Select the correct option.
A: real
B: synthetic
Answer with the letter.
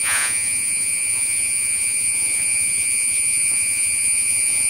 B